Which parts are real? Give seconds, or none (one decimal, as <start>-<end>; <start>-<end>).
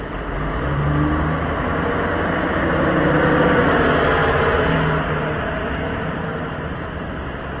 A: 0.0-4.2; 4.7-5.6; 6.1-7.6